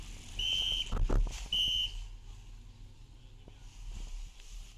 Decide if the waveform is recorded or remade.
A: recorded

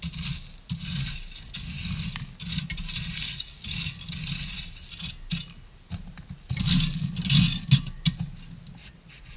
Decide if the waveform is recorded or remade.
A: recorded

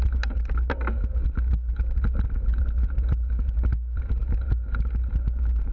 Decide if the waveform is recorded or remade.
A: recorded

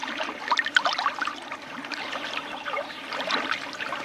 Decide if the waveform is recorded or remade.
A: recorded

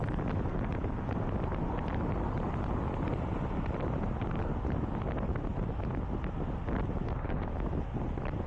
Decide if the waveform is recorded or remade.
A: recorded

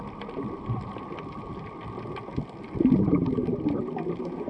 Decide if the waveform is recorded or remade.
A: recorded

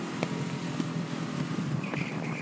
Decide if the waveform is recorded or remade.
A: recorded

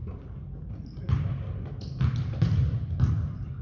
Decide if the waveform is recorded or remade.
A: recorded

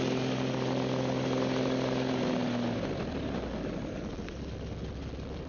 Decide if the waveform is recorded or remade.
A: recorded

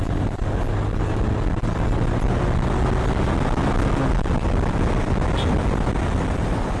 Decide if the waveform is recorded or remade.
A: recorded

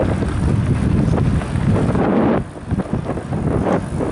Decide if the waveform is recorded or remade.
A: recorded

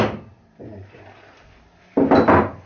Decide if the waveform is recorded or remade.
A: recorded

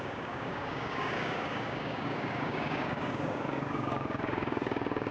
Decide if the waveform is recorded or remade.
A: remade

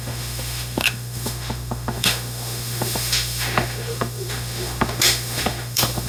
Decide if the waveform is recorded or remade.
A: remade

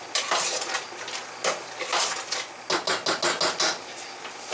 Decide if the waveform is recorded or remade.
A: recorded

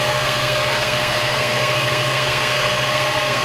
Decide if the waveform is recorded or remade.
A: remade